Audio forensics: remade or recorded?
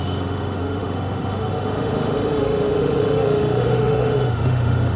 remade